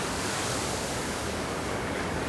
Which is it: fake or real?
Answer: fake